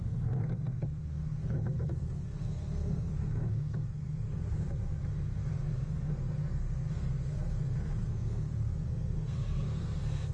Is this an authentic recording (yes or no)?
no